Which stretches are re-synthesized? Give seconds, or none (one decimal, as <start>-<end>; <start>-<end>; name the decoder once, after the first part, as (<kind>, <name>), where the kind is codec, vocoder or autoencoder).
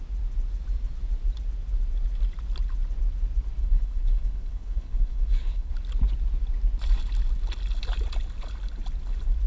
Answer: 3.6-5.7 (codec, HILCodec)